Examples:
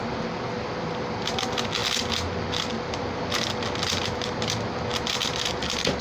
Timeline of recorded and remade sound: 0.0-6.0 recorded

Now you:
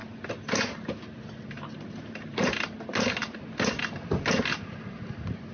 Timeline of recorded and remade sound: 0.0-5.5 recorded

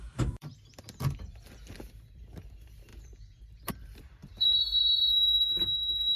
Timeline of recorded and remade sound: 0.0-0.5 remade; 0.5-1.7 recorded; 1.7-6.2 remade

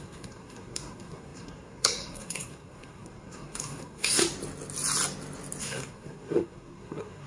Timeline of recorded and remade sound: 0.0-4.2 remade; 4.2-5.6 recorded; 5.6-7.3 remade

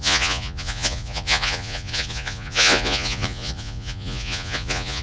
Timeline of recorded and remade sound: 0.0-5.0 remade

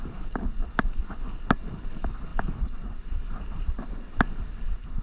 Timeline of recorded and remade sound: 0.0-2.3 recorded; 2.3-3.8 remade; 3.8-5.0 recorded

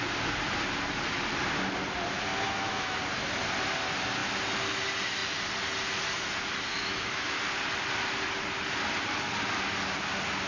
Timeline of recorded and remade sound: 0.0-2.3 recorded; 2.3-3.0 remade; 3.0-6.7 recorded; 6.7-7.4 remade; 7.4-10.5 recorded

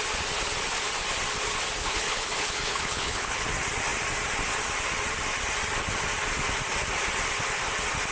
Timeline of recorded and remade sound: 0.0-1.8 recorded; 1.8-3.4 remade; 3.4-8.1 recorded